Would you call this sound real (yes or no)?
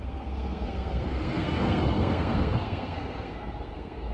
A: no